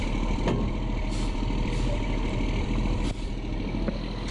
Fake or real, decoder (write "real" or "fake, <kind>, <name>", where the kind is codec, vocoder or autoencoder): real